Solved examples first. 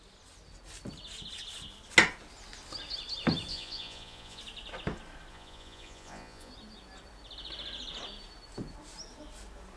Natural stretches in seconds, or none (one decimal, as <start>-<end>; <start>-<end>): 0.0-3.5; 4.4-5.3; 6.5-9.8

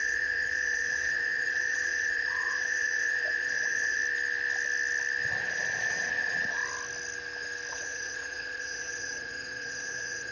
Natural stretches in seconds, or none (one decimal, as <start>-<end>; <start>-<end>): 4.0-5.4; 6.6-7.7

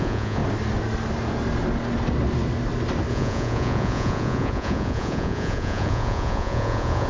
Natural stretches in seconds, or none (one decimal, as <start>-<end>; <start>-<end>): 0.4-3.1